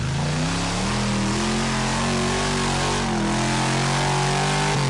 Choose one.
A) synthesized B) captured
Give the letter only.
B